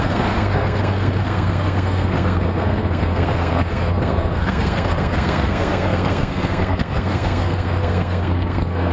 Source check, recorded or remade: remade